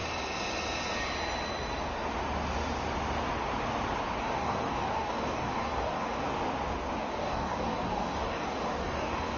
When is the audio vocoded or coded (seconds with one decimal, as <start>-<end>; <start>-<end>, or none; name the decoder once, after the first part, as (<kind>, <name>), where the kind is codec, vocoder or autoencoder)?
4.2-6.3 (codec, DAC); 7.0-9.4